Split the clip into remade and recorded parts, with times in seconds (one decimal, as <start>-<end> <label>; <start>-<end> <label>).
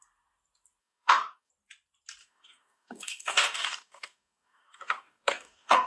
0.0-0.8 recorded; 0.8-1.5 remade; 1.5-2.2 recorded; 2.2-5.9 remade